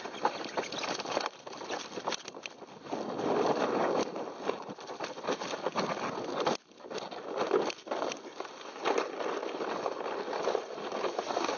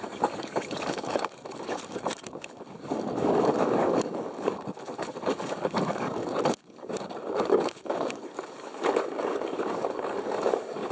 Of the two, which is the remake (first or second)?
second